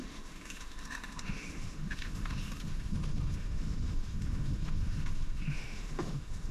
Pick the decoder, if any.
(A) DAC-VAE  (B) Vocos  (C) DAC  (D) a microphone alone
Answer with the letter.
A